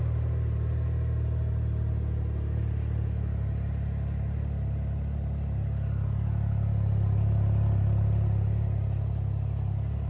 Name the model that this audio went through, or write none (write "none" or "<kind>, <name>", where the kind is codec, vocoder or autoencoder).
none